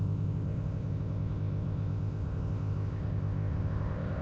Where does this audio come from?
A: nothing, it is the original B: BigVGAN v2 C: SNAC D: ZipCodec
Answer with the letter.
D